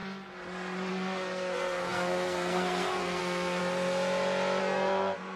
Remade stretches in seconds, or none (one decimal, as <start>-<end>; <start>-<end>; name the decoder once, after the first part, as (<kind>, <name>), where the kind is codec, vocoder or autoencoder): 0.9-3.6 (codec, SNAC); 4.6-5.4